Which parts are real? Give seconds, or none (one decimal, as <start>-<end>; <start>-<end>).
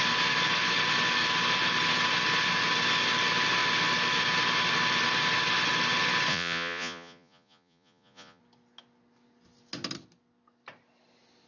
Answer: 0.0-6.3; 8.4-11.5